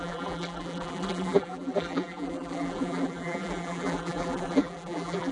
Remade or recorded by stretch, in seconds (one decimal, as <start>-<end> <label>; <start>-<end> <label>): 0.0-5.3 remade